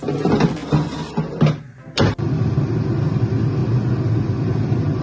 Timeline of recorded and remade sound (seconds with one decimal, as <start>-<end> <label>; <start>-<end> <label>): 0.0-5.0 recorded